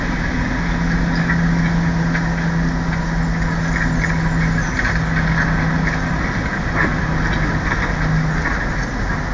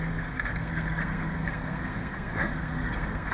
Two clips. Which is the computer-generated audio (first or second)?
second